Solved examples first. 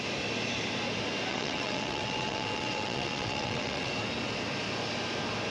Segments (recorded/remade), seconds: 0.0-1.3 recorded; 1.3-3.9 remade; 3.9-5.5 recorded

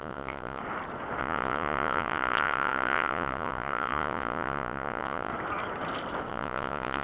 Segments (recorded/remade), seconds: 0.0-0.6 remade; 0.6-1.2 recorded; 1.2-5.3 remade; 5.3-6.3 recorded; 6.3-7.0 remade

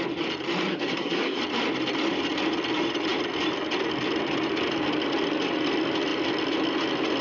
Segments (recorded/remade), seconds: 0.0-0.7 recorded; 0.7-1.4 remade; 1.4-7.2 recorded

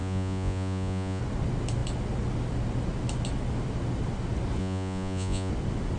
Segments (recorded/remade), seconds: 0.0-1.2 remade; 1.2-4.6 recorded; 4.6-5.5 remade; 5.5-6.0 recorded

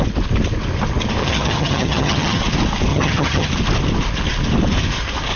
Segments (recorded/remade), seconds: 0.0-1.2 recorded; 1.2-2.4 remade; 2.4-2.9 recorded; 2.9-3.5 remade; 3.5-5.4 recorded

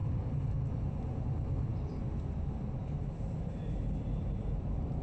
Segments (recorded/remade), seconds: 0.0-0.6 remade; 0.6-1.7 recorded; 1.7-5.0 remade